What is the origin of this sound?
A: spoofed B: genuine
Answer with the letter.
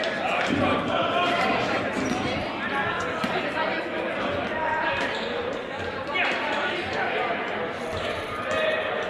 B